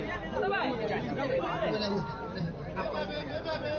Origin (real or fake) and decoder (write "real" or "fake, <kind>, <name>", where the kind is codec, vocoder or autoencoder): real